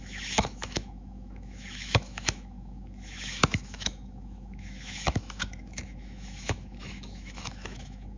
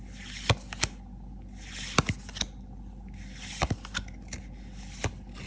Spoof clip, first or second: first